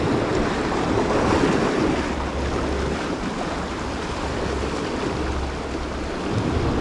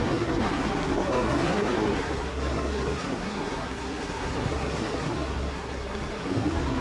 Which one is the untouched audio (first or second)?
first